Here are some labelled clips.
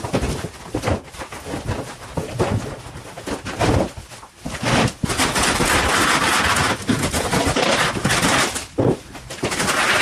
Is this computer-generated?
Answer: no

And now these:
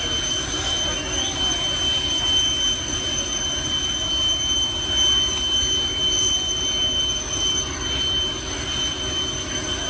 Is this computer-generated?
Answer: no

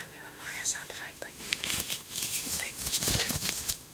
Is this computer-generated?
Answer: yes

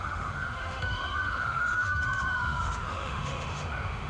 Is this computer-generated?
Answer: yes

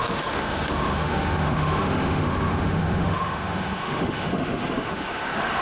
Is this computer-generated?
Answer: yes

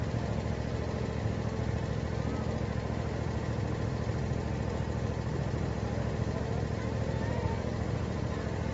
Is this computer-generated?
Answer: no